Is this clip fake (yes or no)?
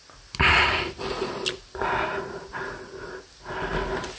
no